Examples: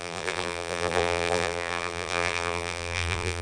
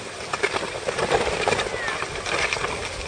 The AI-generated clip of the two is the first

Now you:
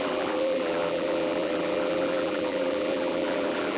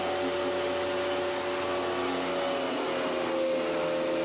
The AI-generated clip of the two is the first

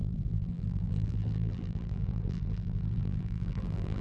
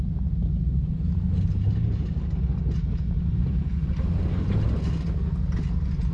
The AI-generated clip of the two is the first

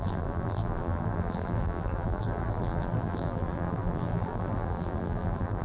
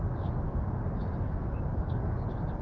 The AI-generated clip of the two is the first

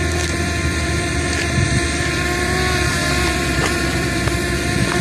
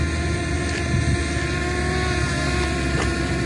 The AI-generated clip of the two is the first